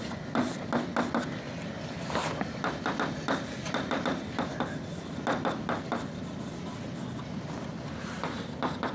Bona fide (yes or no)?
yes